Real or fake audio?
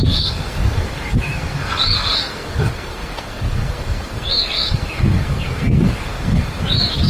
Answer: fake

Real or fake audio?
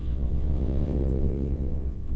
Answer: fake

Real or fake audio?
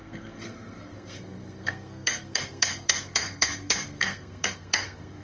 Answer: fake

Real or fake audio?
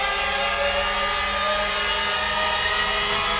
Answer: real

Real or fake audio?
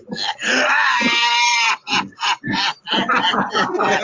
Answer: real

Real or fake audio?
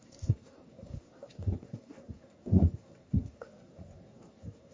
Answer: fake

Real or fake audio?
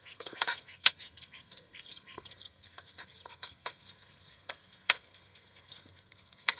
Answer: fake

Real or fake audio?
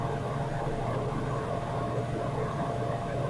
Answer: real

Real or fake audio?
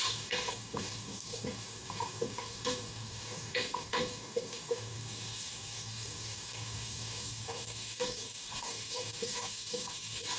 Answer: fake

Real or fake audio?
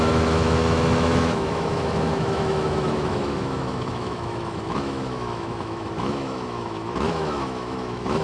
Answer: fake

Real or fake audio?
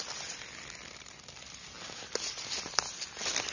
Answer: real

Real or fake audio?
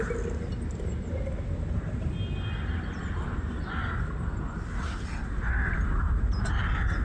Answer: real